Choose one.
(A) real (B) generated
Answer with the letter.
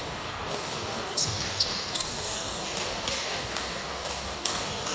B